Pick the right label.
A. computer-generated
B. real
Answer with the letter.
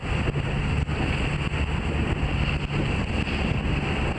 B